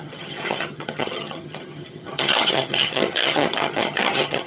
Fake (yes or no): yes